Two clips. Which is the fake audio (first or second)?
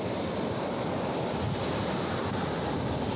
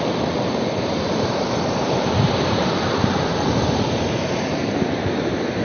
second